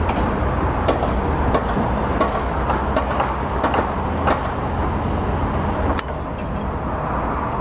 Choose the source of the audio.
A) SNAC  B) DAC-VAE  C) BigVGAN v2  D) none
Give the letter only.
D